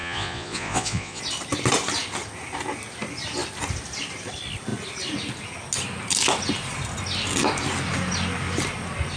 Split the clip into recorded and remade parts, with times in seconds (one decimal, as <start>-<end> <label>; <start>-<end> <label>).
0.0-1.2 remade; 1.2-9.2 recorded